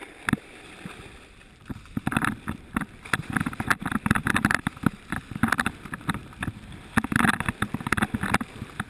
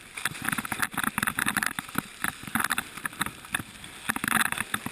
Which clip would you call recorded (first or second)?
second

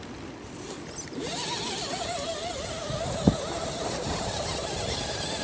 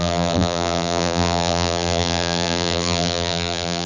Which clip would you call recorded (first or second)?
first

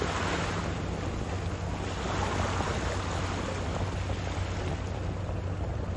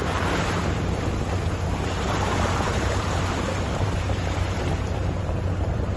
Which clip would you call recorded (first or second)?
first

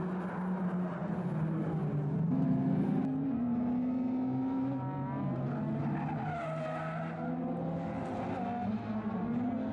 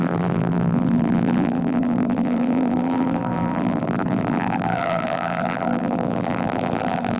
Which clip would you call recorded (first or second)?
first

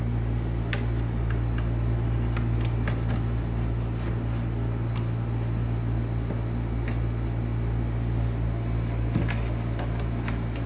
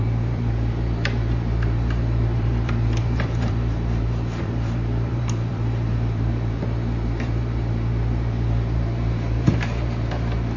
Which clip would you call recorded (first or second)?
first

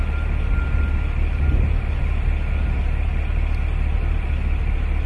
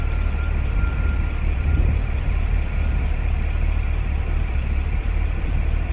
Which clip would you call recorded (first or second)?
first